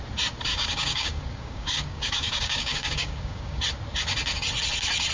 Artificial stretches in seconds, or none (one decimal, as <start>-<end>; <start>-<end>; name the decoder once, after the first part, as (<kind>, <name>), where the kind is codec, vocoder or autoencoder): 0.5-3.6 (codec, DAC)